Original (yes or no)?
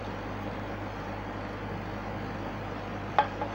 yes